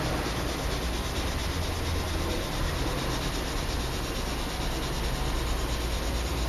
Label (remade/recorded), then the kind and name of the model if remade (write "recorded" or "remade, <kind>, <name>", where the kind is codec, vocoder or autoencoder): recorded